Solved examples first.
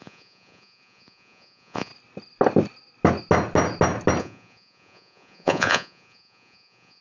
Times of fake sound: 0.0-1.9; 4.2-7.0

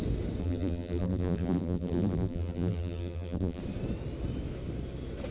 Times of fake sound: 0.4-3.6